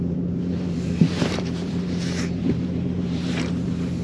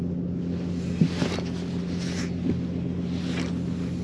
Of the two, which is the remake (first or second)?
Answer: first